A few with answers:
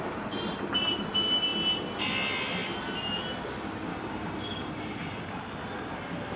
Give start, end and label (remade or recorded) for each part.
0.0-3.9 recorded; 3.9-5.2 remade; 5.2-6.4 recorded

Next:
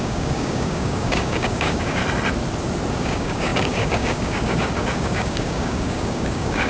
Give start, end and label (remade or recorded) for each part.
0.0-2.0 remade; 2.0-2.9 recorded; 2.9-6.7 remade

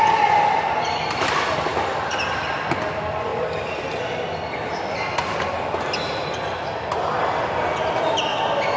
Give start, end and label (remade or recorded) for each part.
0.0-8.8 recorded

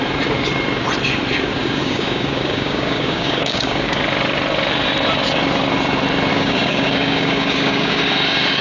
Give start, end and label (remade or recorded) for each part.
0.0-1.6 recorded; 1.6-4.0 remade; 4.0-6.3 recorded; 6.3-8.0 remade; 8.0-8.6 recorded

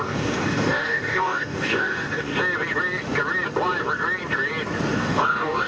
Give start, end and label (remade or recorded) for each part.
0.0-2.3 remade; 2.3-5.0 recorded; 5.0-5.7 remade

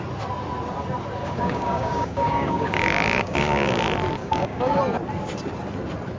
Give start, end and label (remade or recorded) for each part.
0.0-1.2 recorded; 1.2-3.8 remade; 3.8-4.2 recorded; 4.2-4.8 remade; 4.8-6.2 recorded

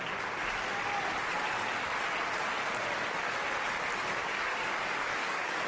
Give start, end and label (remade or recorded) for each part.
0.0-4.2 recorded; 4.2-5.7 remade